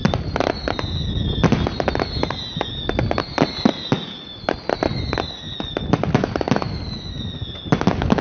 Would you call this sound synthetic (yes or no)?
no